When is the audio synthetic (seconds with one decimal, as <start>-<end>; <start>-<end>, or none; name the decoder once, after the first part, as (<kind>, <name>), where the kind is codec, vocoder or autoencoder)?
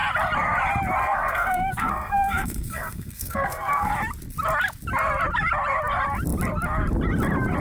1.0-3.9 (codec, SNAC)